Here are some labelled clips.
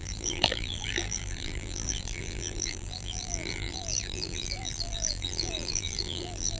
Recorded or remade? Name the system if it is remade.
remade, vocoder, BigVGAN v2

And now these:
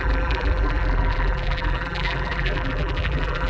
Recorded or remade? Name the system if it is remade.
remade, vocoder, BigVGAN v2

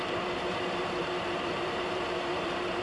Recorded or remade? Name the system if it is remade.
remade, vocoder, BigVGAN v2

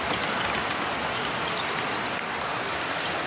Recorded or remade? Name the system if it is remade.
recorded